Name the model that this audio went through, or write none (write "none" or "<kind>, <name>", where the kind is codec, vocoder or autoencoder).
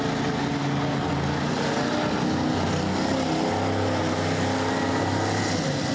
none